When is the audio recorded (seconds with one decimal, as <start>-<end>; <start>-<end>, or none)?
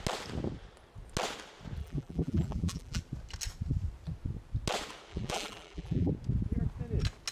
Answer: 0.0-1.8; 3.0-5.1; 6.1-7.3